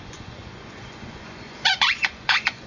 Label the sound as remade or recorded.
remade